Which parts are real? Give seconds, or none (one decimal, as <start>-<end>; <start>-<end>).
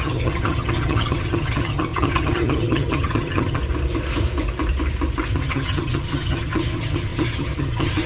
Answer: 3.6-5.3